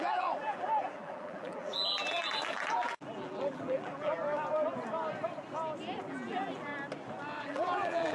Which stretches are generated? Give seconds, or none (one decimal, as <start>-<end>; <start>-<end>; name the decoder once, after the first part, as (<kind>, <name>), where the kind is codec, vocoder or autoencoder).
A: 0.0-4.2 (vocoder, BigVGAN v2); 6.0-6.7; 7.4-8.1